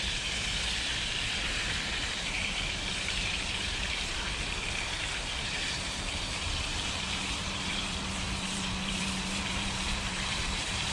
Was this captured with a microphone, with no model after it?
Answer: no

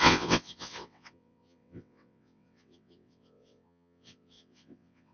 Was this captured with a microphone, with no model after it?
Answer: no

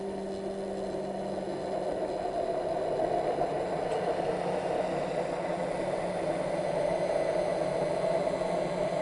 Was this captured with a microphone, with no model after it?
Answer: yes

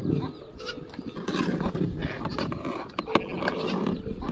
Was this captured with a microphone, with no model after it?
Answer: yes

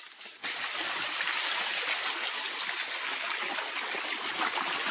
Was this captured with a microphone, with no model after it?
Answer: yes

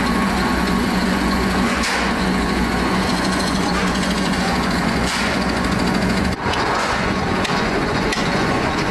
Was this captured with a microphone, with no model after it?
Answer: no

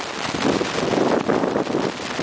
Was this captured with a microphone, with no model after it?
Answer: yes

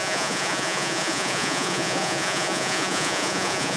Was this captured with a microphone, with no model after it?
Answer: no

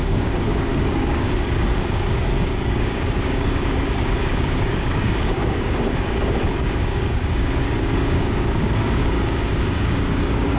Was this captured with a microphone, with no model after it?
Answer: no